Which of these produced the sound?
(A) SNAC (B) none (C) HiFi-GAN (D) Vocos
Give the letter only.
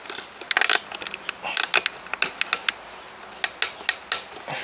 B